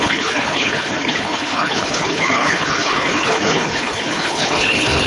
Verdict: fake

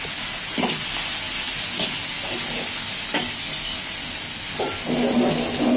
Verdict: real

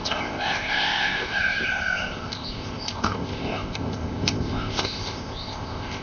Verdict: fake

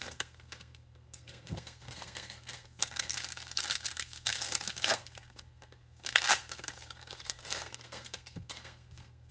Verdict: fake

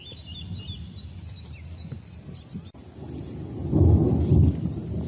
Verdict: real